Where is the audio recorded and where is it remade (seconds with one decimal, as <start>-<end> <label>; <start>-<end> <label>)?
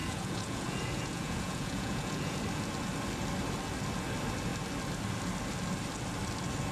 0.0-2.4 remade; 2.4-6.7 recorded